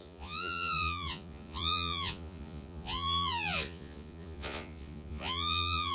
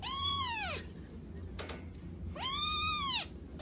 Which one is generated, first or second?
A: first